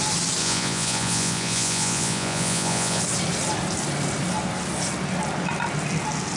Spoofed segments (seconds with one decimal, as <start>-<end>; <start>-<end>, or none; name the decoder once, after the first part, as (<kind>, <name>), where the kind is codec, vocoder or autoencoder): 0.4-3.0 (vocoder, Vocos)